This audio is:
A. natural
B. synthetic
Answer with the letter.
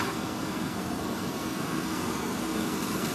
B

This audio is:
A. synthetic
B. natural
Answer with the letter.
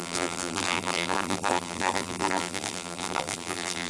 A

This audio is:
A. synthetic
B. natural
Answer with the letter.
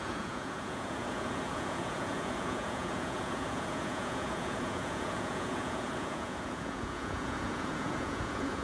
A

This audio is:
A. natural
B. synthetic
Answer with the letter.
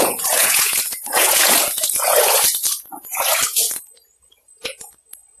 B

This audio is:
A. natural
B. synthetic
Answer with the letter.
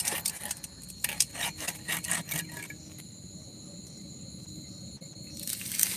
A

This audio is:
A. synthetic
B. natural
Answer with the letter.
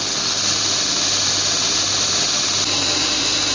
B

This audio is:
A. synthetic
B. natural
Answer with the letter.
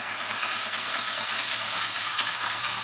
A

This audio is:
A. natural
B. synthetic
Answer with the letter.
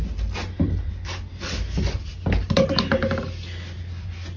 A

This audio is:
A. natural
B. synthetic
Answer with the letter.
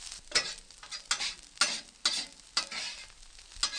A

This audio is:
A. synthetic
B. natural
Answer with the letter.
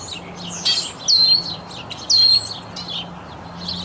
B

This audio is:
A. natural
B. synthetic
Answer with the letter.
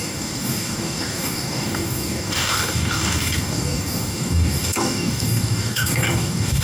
B